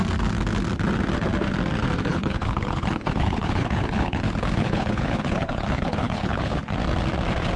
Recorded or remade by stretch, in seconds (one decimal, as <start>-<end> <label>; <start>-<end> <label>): 0.0-2.1 recorded; 2.1-6.7 remade; 6.7-7.6 recorded